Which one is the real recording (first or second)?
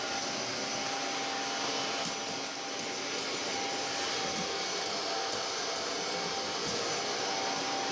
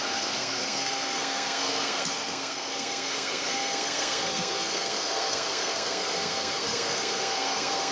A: first